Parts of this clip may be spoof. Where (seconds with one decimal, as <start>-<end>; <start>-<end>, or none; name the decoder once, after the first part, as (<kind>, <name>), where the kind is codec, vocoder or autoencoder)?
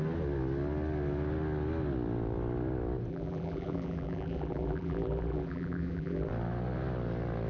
3.1-6.3 (vocoder, BigVGAN v2)